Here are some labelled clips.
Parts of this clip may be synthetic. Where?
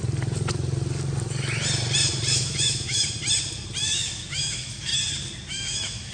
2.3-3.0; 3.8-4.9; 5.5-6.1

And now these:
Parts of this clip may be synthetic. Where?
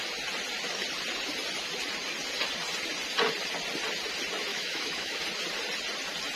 4.5-5.2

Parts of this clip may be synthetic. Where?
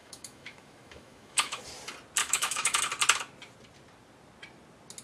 0.0-1.6; 2.2-2.8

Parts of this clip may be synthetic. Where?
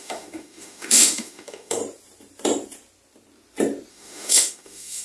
0.0-1.8; 3.9-5.0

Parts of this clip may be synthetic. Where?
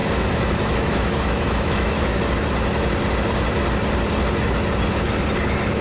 0.0-2.2